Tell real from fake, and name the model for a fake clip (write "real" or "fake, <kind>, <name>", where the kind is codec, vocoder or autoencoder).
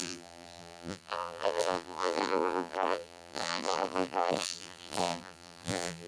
fake, vocoder, BigVGAN v2